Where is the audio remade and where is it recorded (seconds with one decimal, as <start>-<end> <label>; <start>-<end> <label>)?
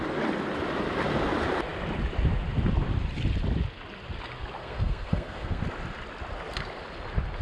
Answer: 0.0-4.6 recorded; 4.6-5.6 remade; 5.6-7.4 recorded